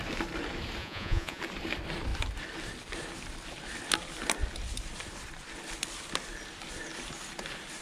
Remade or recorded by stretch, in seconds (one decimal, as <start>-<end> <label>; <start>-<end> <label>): 0.0-0.8 recorded; 0.8-1.4 remade; 1.4-7.8 recorded